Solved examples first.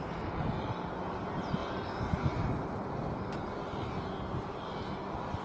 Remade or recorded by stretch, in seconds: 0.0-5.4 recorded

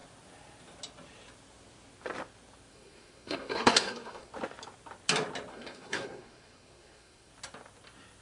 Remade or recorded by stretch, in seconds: 0.0-2.7 recorded; 2.7-4.3 remade; 4.3-5.5 recorded; 5.5-7.3 remade; 7.3-8.2 recorded

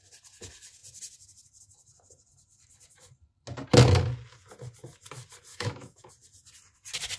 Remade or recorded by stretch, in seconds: 0.0-5.5 recorded; 5.5-6.1 remade; 6.1-7.2 recorded

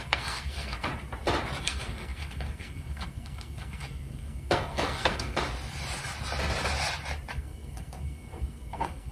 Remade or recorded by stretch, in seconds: 0.0-0.9 remade; 0.9-1.6 recorded; 1.6-5.4 remade; 5.4-7.3 recorded; 7.3-9.1 remade

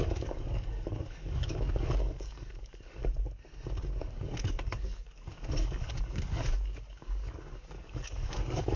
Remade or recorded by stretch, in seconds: 0.0-3.0 remade; 3.0-4.0 recorded; 4.0-8.8 remade

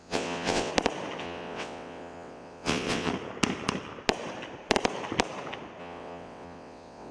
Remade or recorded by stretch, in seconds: 0.0-0.7 remade; 0.7-1.2 recorded; 1.2-3.1 remade; 3.1-5.8 recorded; 5.8-7.1 remade